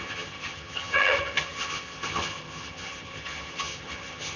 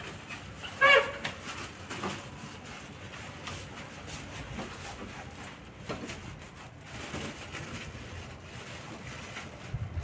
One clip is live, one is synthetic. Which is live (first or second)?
second